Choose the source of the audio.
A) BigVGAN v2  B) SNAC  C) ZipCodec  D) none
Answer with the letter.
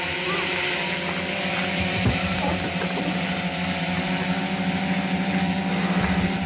D